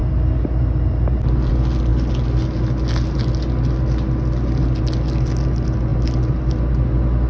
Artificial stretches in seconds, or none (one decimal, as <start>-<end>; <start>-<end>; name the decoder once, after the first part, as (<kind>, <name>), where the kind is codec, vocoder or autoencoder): none